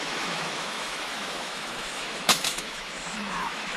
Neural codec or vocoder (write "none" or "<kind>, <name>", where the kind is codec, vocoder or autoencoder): autoencoder, DAC-VAE